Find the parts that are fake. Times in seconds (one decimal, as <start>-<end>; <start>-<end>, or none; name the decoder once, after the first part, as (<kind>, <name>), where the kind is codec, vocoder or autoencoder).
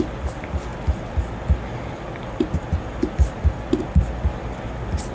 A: none